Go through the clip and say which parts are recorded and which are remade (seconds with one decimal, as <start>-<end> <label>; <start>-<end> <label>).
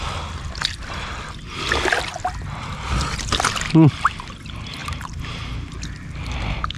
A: 0.0-6.8 recorded